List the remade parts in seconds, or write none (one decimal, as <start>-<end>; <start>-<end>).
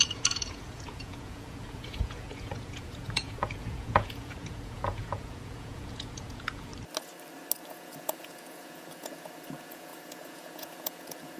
0.0-6.7; 7.7-11.4